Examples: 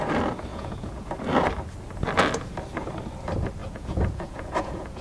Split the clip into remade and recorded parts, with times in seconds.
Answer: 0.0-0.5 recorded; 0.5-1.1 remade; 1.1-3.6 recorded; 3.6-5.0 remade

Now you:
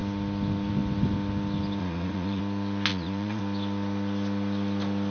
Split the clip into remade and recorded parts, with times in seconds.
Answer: 0.0-1.8 recorded; 1.8-2.4 remade; 2.4-2.9 recorded; 2.9-3.4 remade; 3.4-5.1 recorded

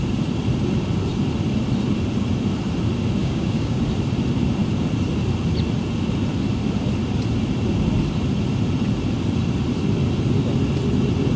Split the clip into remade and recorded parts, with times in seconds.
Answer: 0.0-3.2 recorded; 3.2-3.8 remade; 3.8-11.4 recorded

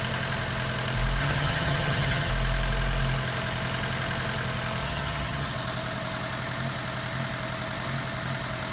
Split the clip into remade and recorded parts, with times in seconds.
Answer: 0.0-1.2 recorded; 1.2-2.3 remade; 2.3-4.8 recorded; 4.8-5.5 remade; 5.5-8.7 recorded